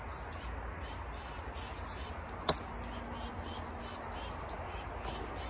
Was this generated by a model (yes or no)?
no